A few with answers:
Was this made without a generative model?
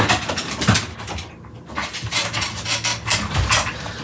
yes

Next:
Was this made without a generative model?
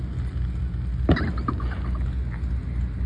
yes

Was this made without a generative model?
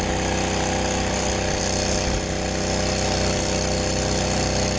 yes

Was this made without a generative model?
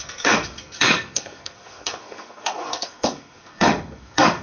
no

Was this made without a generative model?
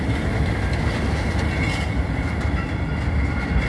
no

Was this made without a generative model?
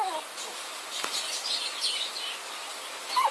yes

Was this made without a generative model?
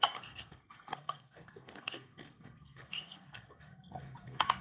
no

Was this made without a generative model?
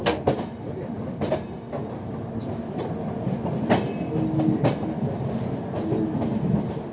yes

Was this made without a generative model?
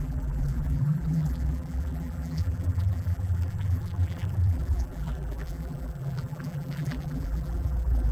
no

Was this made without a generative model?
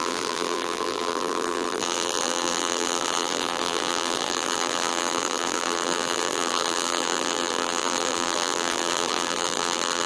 no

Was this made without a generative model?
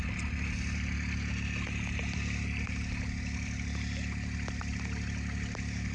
yes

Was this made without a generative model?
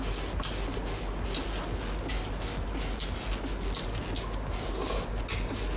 yes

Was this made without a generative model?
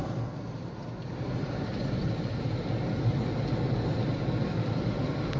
yes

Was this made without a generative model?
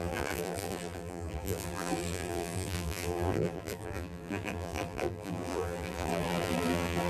no